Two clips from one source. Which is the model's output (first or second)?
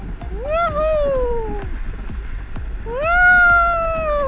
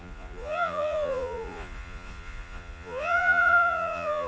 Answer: second